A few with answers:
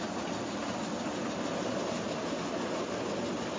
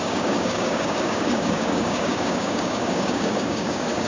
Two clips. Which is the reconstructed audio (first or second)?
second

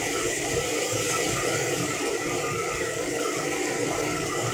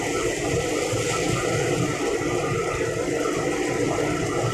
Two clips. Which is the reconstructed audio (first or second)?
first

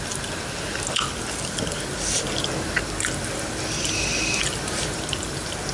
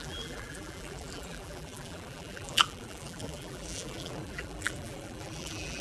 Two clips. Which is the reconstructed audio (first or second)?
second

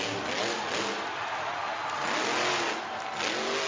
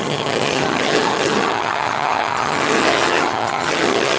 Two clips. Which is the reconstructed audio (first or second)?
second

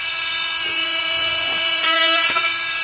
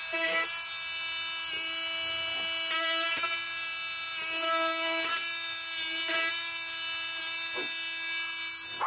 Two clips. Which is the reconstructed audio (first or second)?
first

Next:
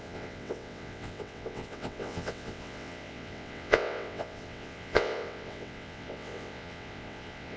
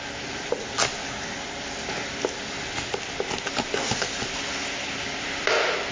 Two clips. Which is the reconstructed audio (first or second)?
first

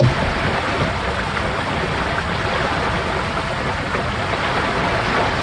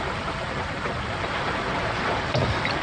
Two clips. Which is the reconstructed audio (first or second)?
second